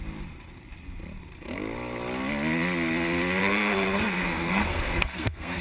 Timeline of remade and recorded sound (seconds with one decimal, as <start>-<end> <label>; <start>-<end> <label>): 0.0-3.4 recorded; 3.4-5.6 remade